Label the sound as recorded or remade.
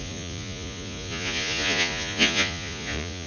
remade